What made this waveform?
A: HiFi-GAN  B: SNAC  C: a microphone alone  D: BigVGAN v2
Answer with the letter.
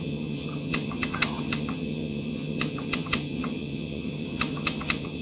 A